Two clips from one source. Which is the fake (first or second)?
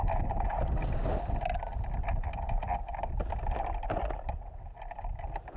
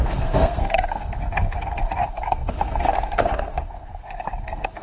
second